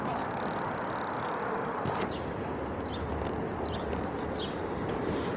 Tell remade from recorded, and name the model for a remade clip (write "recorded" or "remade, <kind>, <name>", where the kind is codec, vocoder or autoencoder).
recorded